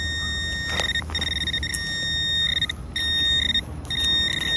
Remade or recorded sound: recorded